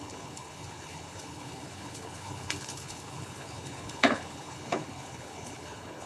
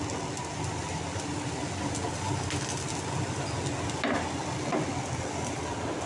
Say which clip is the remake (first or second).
first